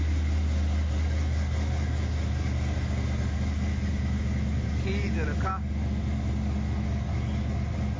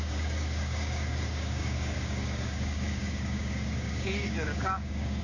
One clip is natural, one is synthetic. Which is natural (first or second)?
first